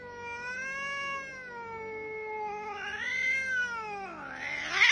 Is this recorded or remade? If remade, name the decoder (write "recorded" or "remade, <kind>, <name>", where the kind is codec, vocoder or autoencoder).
recorded